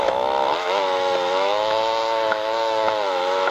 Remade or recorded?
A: remade